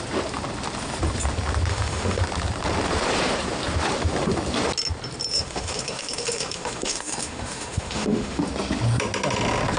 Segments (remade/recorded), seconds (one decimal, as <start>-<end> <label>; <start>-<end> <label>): 0.0-1.7 recorded; 1.7-2.2 remade; 2.2-5.3 recorded; 5.3-8.4 remade; 8.4-9.8 recorded